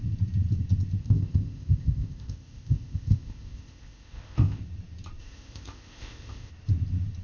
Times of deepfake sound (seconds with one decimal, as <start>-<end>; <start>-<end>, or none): 1.0-4.6; 5.2-6.5